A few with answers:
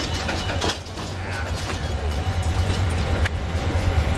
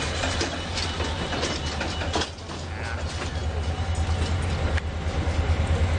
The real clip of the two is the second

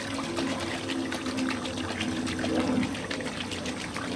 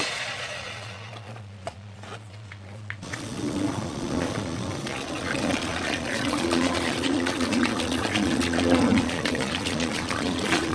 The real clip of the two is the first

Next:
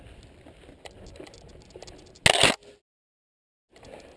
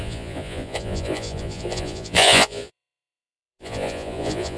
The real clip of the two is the first